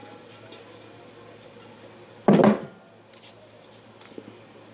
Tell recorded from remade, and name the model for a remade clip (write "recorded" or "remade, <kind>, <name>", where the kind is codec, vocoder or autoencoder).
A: recorded